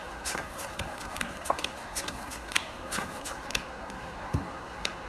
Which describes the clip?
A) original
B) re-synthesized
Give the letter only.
B